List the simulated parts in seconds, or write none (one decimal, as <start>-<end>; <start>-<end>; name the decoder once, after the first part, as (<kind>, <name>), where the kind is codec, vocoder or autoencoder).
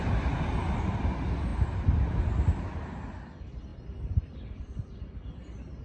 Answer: none